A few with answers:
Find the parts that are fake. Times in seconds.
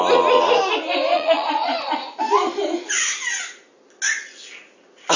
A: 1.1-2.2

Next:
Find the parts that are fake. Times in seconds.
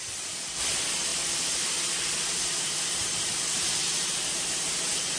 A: none